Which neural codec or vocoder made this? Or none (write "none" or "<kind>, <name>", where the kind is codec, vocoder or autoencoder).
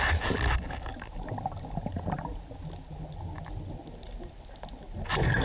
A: none